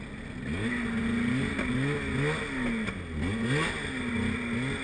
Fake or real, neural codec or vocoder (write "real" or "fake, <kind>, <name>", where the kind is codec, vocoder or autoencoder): real